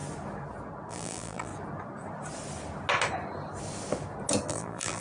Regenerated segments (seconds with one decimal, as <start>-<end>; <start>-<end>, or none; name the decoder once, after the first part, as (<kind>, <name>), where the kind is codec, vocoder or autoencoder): 0.9-1.5 (vocoder, BigVGAN v2); 4.5-5.0